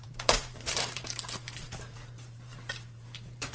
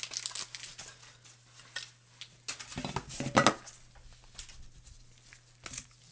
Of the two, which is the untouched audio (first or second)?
second